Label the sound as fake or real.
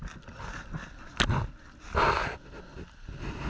real